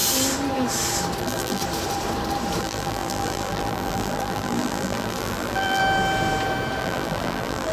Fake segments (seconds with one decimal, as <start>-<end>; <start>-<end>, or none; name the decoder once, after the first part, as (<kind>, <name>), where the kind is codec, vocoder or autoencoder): 1.2-1.6 (vocoder, BigVGAN v2); 2.6-5.8; 6.8-7.7